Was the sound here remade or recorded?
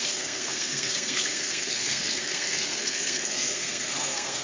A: remade